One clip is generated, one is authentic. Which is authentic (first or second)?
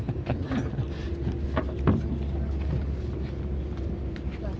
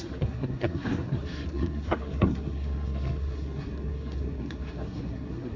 first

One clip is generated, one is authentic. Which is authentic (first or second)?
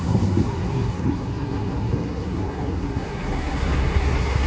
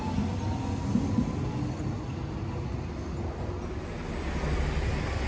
second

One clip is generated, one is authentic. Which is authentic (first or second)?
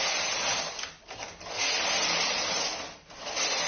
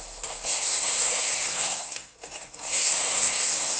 first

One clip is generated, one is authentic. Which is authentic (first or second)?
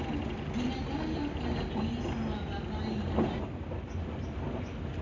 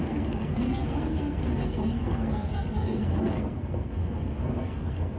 first